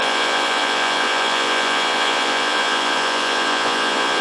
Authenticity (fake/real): fake